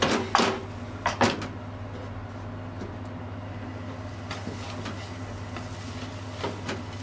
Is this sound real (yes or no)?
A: yes